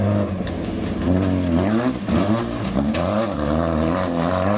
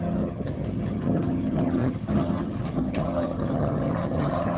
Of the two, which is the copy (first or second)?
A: second